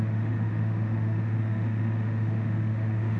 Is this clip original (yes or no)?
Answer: no